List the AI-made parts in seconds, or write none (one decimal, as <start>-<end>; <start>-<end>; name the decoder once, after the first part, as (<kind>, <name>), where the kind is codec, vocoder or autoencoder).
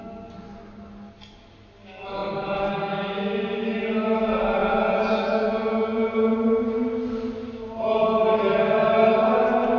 4.6-6.3 (vocoder, Vocos)